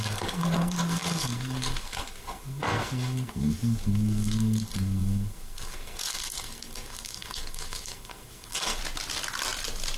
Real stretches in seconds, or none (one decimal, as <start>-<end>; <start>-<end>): 8.8-10.0